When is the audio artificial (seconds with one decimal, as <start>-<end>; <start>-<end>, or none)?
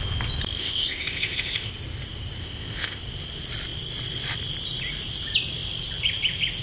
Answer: 0.6-1.7; 2.4-3.0